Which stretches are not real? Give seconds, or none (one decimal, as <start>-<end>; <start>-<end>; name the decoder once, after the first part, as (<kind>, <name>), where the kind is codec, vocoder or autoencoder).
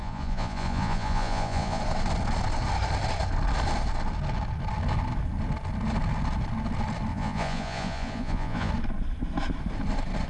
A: 0.0-1.8 (vocoder, Vocos); 7.1-8.7